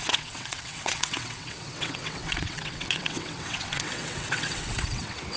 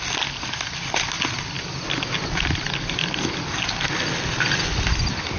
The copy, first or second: first